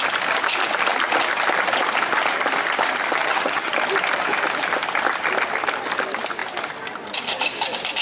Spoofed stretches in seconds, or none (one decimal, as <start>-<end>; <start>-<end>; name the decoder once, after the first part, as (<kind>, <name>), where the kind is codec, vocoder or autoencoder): 3.2-3.7 (vocoder, HiFi-GAN)